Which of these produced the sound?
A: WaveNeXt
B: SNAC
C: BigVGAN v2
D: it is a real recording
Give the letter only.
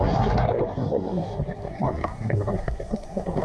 B